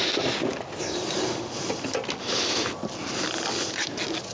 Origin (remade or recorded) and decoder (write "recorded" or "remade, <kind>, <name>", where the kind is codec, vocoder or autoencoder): recorded